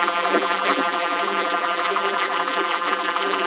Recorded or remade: remade